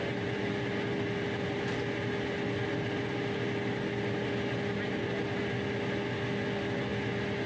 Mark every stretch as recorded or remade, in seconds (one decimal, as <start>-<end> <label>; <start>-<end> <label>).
0.0-7.5 recorded